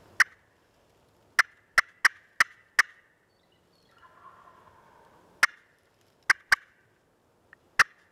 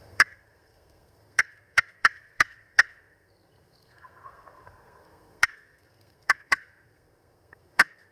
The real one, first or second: first